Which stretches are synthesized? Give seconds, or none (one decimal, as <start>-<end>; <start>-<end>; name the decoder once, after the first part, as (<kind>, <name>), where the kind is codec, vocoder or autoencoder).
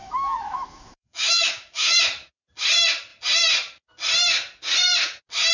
0.0-2.0 (autoencoder, DAC-VAE)